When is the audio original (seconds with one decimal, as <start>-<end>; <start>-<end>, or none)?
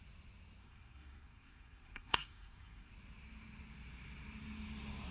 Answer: 0.0-0.6; 2.9-5.1